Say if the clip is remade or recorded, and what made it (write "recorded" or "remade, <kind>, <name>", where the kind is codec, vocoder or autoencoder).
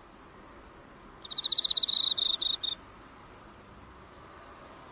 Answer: recorded